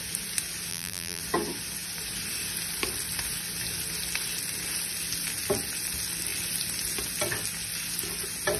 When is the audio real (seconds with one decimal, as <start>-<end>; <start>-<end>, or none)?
0.0-0.7; 1.2-8.6